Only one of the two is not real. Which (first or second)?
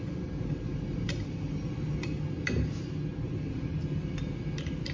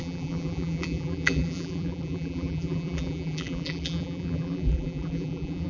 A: second